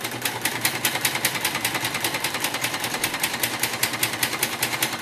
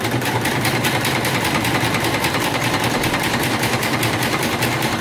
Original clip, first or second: first